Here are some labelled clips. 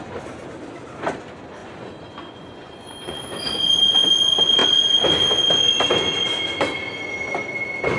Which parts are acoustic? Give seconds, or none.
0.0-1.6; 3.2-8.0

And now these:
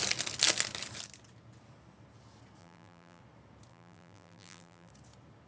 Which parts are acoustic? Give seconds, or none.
0.0-2.6; 3.2-3.7; 4.9-5.5

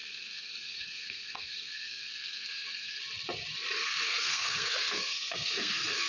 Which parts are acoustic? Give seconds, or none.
3.0-3.8

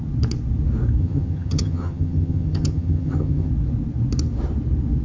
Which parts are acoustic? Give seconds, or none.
0.0-1.0; 3.5-5.0

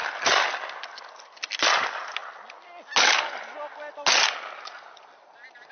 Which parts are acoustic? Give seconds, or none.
0.0-5.7

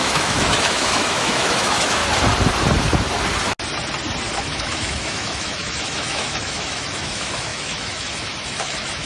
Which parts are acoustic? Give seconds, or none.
2.0-4.4